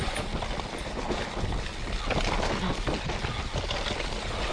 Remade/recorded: recorded